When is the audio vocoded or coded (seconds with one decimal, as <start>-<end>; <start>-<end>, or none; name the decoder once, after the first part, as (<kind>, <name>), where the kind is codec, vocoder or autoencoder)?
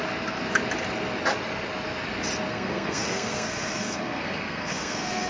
2.5-5.3 (codec, SNAC)